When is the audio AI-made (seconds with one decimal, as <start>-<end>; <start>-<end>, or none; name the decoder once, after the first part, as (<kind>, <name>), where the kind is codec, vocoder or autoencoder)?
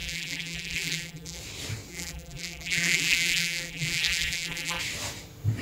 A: 0.0-1.4 (vocoder, BigVGAN v2); 1.9-4.8